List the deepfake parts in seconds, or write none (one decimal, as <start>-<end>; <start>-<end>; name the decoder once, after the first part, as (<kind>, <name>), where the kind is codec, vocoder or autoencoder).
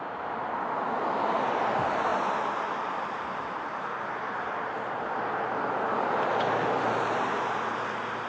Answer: none